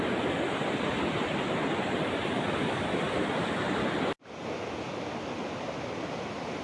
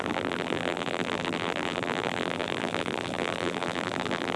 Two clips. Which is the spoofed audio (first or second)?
second